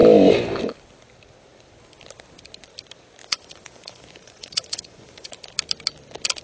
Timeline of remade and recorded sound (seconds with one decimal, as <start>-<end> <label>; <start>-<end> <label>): 0.0-3.2 recorded; 3.2-5.3 remade; 5.3-6.4 recorded